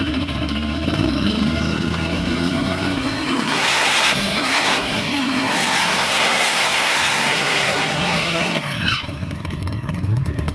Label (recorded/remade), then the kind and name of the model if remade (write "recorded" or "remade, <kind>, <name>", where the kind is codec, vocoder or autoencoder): remade, codec, SNAC